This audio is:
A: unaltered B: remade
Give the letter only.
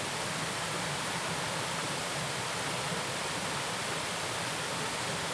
A